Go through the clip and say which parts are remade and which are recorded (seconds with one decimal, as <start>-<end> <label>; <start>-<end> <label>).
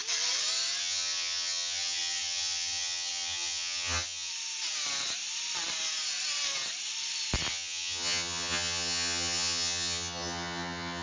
0.0-0.8 recorded; 0.8-4.3 remade; 4.3-7.5 recorded; 7.5-11.0 remade